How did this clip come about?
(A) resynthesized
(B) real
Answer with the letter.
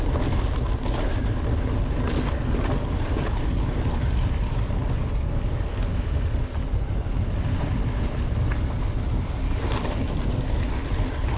B